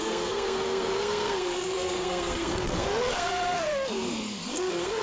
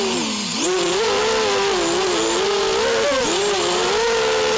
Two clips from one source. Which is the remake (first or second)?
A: first